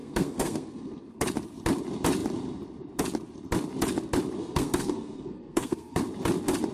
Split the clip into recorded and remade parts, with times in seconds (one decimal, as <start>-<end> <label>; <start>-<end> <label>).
0.0-1.2 remade; 1.2-4.4 recorded; 4.4-6.0 remade; 6.0-6.7 recorded